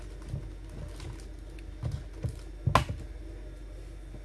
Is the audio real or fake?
real